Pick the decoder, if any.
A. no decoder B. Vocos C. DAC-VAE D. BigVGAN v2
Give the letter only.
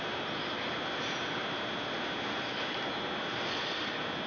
A